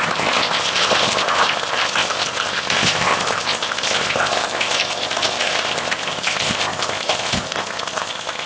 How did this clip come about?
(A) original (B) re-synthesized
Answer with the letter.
B